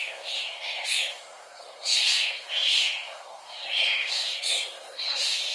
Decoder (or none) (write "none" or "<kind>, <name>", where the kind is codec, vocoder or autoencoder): codec, SNAC